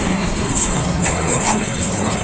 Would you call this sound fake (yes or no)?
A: yes